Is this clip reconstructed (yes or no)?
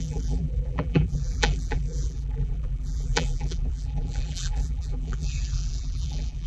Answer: yes